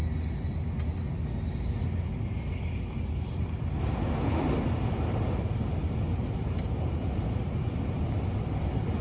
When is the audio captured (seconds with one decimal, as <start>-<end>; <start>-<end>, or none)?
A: 0.0-9.0